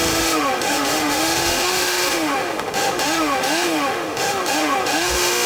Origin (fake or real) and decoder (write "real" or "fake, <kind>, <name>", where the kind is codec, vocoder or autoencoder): fake, autoencoder, DAC-VAE